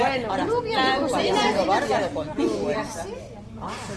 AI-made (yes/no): no